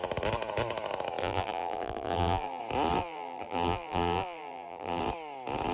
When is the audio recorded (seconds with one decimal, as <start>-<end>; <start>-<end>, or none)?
0.0-1.2; 2.6-3.0; 5.0-5.7